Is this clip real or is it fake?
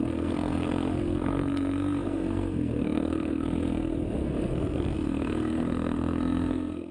fake